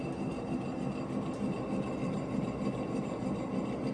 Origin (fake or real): real